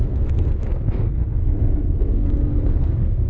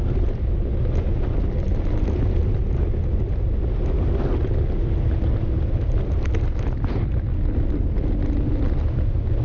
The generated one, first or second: first